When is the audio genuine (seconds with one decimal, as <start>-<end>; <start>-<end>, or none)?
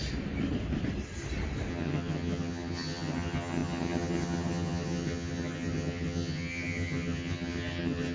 0.0-1.7